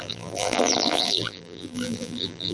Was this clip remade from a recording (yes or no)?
yes